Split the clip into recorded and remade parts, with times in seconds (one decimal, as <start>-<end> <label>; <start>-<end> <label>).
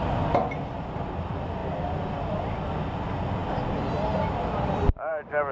0.0-5.5 recorded